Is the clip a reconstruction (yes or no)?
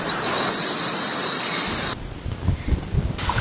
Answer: no